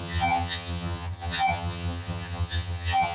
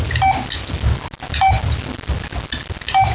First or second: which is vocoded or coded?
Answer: first